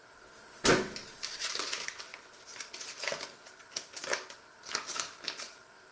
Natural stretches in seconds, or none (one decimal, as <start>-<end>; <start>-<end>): 0.0-5.9